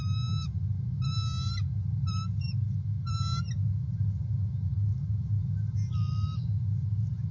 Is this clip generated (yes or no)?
no